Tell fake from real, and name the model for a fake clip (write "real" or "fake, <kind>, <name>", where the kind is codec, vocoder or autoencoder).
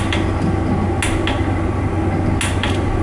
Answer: real